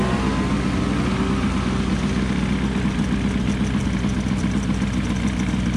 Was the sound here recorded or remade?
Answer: recorded